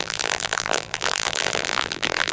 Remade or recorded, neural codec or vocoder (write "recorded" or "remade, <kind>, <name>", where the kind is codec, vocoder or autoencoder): remade, vocoder, BigVGAN v2